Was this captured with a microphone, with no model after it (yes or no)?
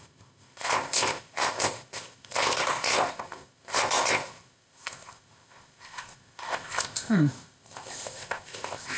no